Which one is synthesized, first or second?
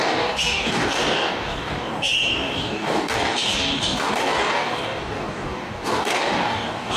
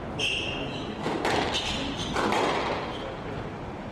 first